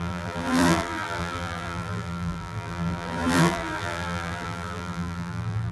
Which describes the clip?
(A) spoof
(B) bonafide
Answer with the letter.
A